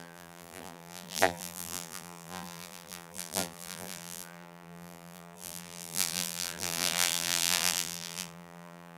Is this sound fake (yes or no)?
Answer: yes